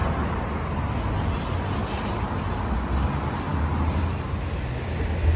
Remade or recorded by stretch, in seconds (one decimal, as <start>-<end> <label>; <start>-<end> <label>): 0.0-5.4 recorded

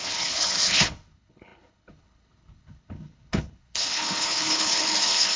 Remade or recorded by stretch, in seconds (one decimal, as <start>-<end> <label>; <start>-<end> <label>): 0.0-5.4 remade

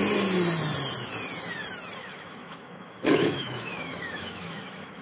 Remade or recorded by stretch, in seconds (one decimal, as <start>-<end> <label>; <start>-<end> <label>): 0.0-2.0 recorded; 2.0-5.0 remade